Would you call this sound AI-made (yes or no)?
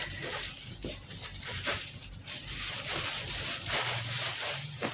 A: yes